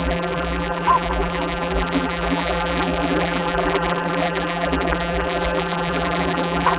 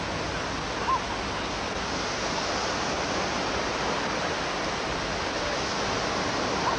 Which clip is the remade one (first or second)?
first